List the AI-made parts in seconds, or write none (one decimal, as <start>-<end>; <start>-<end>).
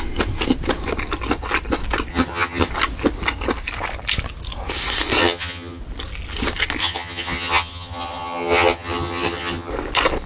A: 2.1-2.7; 5.2-5.8; 6.8-9.7